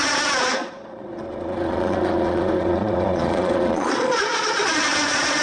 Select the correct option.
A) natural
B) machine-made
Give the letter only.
B